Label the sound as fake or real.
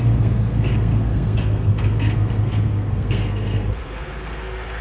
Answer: fake